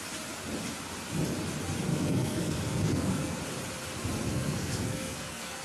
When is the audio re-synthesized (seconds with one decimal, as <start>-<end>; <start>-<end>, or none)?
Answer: 1.9-3.4; 4.3-5.6